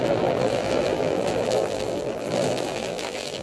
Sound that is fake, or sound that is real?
fake